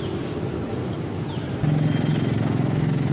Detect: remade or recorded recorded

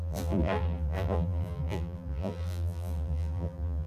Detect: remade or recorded remade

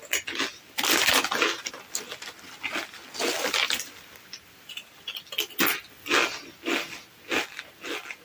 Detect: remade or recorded recorded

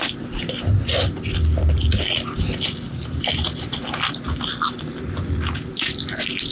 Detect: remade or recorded remade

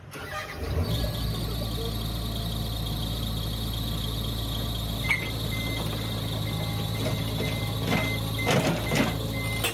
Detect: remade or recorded recorded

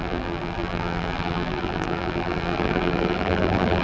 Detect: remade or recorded remade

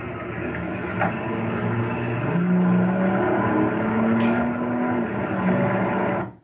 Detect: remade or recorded recorded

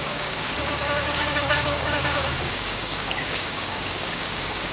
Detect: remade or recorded remade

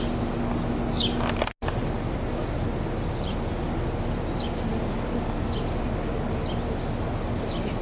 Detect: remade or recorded recorded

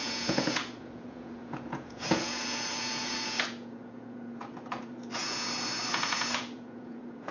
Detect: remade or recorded remade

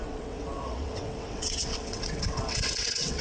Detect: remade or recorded remade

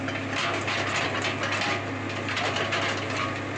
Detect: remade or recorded recorded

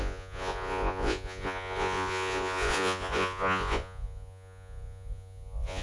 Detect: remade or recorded remade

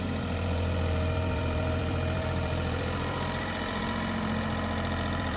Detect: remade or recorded remade